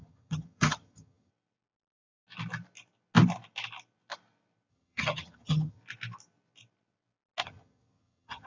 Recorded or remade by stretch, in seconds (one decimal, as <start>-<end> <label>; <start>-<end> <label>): 0.0-1.3 remade; 1.3-4.7 recorded; 4.7-5.8 remade; 5.8-7.4 recorded; 7.4-8.5 remade